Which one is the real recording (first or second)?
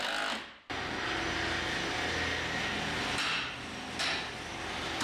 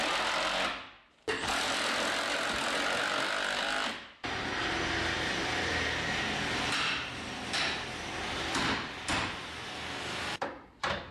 first